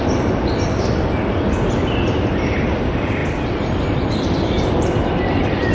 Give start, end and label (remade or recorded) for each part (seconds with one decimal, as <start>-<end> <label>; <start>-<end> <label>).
0.0-5.7 recorded